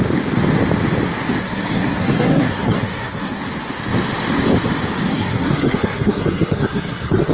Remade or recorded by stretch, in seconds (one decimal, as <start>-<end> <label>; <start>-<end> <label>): 0.0-1.4 recorded; 1.4-3.4 remade; 3.4-5.1 recorded; 5.1-7.3 remade

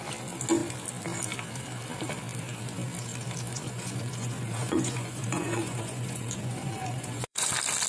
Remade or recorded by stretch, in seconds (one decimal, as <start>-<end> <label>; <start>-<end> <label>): 0.0-3.5 recorded; 3.5-7.5 remade; 7.5-7.9 recorded

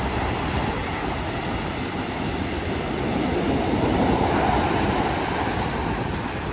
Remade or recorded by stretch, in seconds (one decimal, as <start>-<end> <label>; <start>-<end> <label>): 0.0-6.5 recorded

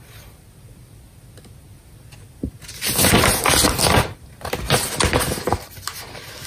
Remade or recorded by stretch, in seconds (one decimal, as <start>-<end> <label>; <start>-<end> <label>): 0.0-6.5 recorded

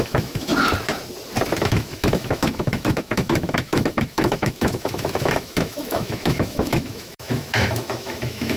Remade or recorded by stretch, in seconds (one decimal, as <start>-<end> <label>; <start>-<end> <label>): 0.0-0.5 remade; 0.5-1.6 recorded; 1.6-8.6 remade

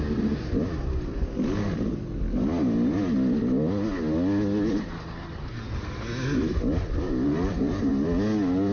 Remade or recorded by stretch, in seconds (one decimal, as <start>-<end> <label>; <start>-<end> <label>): 0.0-8.7 recorded

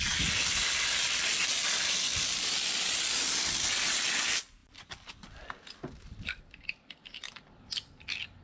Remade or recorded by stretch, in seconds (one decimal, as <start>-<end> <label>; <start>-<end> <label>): 0.0-8.4 recorded

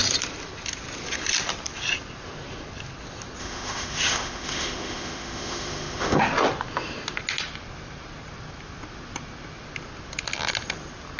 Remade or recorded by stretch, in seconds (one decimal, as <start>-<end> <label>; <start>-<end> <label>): 0.0-3.4 recorded; 3.4-6.2 remade; 6.2-11.2 recorded